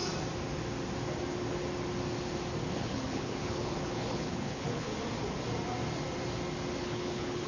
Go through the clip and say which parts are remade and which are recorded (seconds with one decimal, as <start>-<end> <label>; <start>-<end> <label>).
0.0-2.7 recorded; 2.7-4.9 remade; 4.9-6.8 recorded; 6.8-7.5 remade